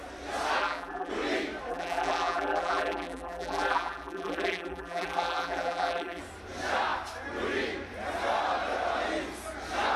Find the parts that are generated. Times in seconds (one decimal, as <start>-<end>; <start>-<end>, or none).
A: 0.6-1.1; 1.7-6.2